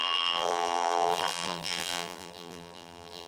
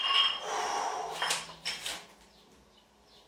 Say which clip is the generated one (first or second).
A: first